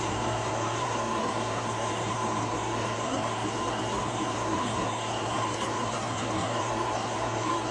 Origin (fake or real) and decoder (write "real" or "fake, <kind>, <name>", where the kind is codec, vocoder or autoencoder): fake, codec, SNAC